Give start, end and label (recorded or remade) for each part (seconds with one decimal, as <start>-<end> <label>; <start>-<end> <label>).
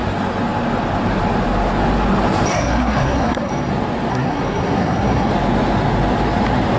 0.0-2.5 recorded; 2.5-3.5 remade; 3.5-4.1 recorded; 4.1-5.3 remade; 5.3-6.8 recorded